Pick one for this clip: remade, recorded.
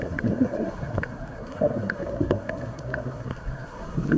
remade